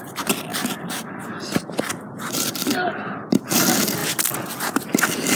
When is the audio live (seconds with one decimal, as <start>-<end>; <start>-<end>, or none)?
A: 0.0-5.4